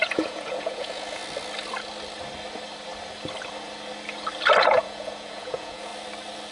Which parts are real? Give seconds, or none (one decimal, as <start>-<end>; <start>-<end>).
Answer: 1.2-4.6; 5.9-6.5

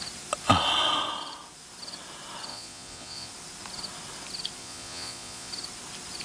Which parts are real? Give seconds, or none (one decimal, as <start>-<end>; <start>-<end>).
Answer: 0.0-2.5; 3.3-4.6; 5.5-6.2

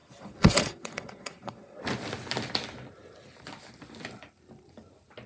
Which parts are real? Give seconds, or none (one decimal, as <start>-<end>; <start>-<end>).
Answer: 1.8-5.3

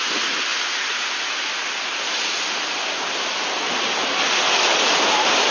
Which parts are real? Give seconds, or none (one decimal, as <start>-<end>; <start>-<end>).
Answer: 0.0-5.5

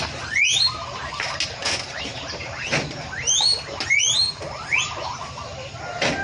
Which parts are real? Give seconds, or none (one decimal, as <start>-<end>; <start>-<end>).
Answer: 0.0-6.2